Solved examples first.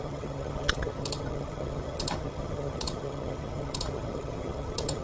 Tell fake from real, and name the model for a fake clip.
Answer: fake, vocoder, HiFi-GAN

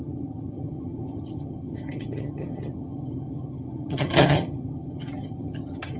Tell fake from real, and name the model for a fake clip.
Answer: fake, vocoder, HiFi-GAN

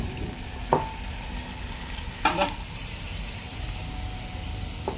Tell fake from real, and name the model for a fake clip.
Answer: real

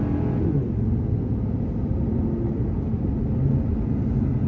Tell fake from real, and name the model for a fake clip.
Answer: real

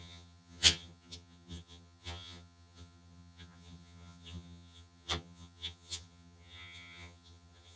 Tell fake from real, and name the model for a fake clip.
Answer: fake, vocoder, HiFi-GAN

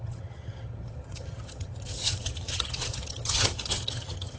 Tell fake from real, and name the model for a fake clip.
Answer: fake, vocoder, HiFi-GAN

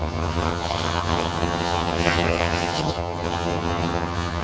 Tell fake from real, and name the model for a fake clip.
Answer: fake, vocoder, HiFi-GAN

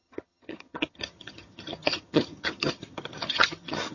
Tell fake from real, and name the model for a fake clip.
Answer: fake, vocoder, HiFi-GAN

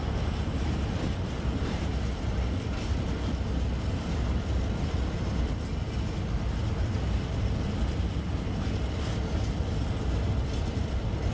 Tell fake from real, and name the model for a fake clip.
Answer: real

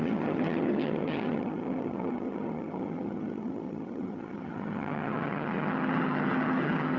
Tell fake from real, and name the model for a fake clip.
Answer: fake, vocoder, HiFi-GAN